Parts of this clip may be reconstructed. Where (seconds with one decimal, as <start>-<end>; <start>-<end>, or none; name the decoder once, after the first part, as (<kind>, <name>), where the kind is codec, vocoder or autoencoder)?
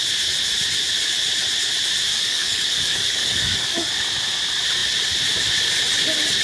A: 2.1-3.9 (codec, DAC)